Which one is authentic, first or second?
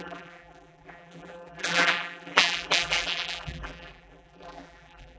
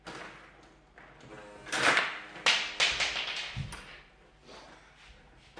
second